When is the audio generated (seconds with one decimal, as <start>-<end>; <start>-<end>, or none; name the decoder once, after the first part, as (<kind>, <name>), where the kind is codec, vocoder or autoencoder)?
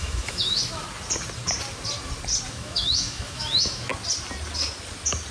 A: 0.0-0.6 (autoencoder, DAC-VAE); 2.5-3.9